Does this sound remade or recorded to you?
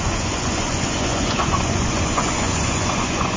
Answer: remade